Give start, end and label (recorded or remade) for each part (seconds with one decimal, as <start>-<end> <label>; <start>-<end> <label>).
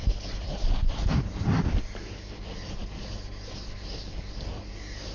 0.0-5.1 recorded